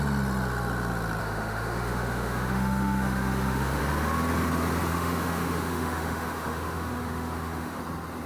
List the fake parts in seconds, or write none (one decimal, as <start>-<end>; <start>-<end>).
1.2-3.8; 4.9-7.8